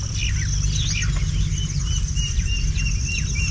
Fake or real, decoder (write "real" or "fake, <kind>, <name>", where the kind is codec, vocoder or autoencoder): real